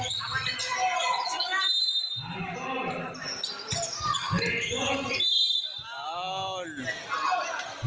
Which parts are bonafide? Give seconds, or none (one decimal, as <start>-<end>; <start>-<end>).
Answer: 0.0-7.9